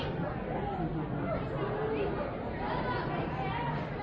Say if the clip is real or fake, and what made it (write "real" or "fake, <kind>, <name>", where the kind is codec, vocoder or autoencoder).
real